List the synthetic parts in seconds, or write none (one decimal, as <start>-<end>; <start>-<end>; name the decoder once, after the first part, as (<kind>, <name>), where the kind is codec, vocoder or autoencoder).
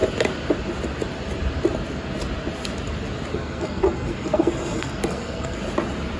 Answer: 3.3-5.6 (codec, SNAC)